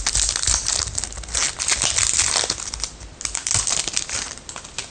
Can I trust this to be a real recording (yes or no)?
yes